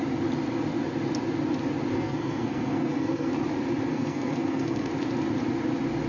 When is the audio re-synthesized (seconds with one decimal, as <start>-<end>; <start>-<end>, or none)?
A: 1.9-3.3; 3.9-4.9